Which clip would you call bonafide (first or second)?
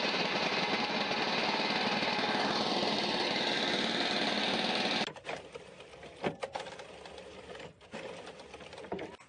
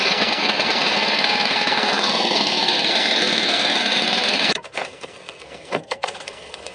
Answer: first